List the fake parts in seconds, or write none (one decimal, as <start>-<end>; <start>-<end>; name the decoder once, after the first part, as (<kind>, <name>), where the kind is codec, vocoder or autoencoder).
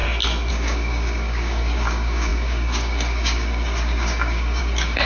0.5-5.1 (codec, DAC)